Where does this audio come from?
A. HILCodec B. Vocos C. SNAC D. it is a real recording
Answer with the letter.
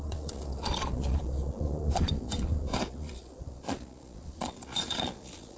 B